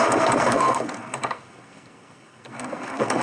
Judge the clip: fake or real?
fake